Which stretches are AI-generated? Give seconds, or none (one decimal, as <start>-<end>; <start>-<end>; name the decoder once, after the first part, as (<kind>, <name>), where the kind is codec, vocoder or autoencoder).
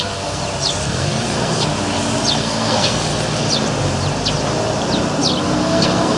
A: 0.0-0.4 (codec, SNAC); 0.9-1.7; 2.4-3.1; 5.4-6.2